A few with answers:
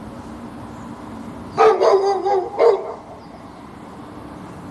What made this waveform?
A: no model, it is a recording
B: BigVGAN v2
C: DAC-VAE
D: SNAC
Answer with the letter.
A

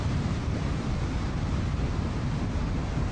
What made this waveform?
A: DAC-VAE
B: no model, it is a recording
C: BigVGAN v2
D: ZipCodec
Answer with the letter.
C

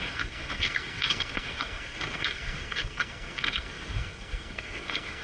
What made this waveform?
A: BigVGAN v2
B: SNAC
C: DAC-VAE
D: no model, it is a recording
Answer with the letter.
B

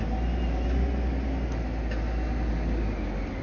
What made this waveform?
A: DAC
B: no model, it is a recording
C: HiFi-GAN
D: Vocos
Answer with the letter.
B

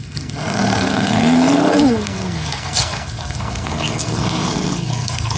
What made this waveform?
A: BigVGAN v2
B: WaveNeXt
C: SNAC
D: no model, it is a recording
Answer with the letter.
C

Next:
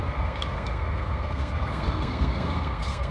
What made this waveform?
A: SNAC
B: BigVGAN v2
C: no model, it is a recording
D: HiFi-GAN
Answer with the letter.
A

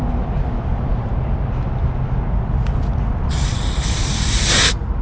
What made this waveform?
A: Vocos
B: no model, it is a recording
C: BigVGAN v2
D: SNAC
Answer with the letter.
B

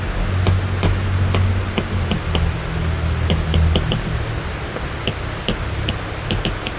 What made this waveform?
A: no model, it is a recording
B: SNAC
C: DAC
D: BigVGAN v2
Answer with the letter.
A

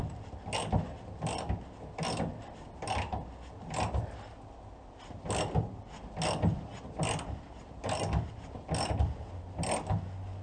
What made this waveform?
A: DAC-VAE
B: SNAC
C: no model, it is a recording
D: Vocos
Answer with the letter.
C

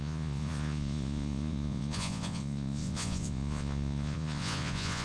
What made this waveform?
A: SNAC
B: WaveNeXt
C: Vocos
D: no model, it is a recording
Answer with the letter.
C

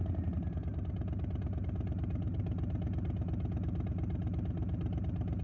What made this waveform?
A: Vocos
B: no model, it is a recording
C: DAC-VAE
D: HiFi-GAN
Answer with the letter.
B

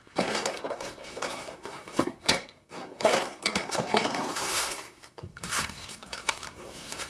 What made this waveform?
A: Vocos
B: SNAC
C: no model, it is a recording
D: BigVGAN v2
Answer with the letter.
B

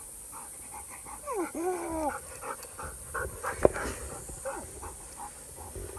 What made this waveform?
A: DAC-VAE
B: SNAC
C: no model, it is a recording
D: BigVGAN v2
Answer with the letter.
C